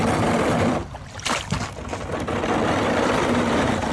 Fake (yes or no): no